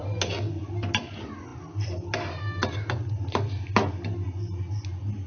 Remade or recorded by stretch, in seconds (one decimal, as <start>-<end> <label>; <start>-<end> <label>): 0.0-5.3 recorded